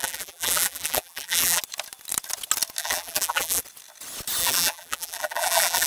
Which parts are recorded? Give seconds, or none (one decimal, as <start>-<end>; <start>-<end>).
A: 1.6-2.8; 3.6-4.4